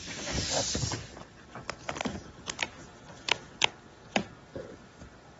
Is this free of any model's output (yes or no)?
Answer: no